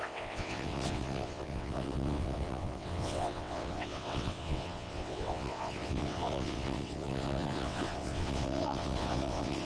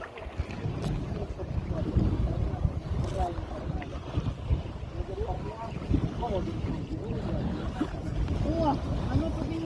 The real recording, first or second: second